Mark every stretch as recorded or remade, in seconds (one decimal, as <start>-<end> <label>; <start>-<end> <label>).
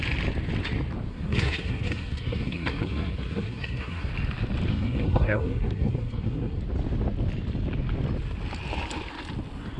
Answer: 0.0-1.1 recorded; 1.1-4.1 remade; 4.1-4.7 recorded; 4.7-6.6 remade; 6.6-9.8 recorded